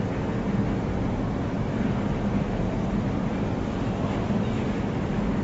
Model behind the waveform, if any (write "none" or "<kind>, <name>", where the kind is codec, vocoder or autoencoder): none